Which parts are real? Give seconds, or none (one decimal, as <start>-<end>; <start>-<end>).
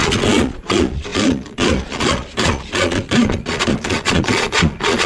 none